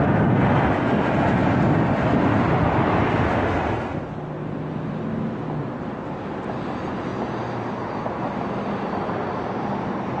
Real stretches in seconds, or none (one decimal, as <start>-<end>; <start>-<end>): 0.0-10.2